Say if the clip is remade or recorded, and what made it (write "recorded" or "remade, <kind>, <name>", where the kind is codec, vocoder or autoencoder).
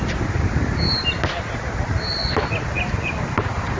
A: recorded